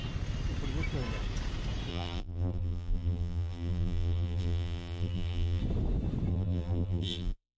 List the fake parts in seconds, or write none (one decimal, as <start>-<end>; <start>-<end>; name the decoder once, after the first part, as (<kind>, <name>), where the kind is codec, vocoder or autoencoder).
1.9-5.6 (vocoder, BigVGAN v2); 6.3-7.6